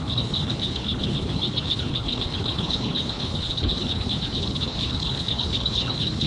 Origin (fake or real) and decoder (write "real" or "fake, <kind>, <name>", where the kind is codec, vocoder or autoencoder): fake, codec, HILCodec